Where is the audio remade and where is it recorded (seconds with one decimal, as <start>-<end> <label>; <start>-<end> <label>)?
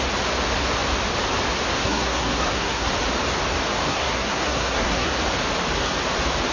0.0-1.8 recorded; 1.8-2.9 remade; 2.9-3.9 recorded; 3.9-5.1 remade; 5.1-6.5 recorded